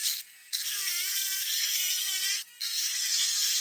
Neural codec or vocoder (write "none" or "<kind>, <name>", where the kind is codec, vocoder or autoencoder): codec, SNAC